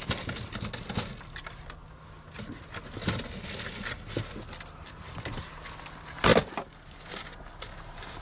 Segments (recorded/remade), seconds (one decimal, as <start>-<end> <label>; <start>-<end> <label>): 0.0-8.2 recorded